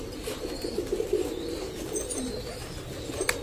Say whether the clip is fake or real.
real